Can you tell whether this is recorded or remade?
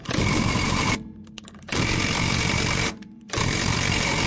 remade